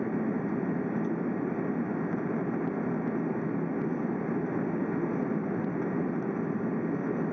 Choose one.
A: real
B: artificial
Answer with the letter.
A